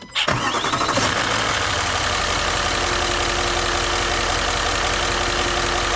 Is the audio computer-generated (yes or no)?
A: no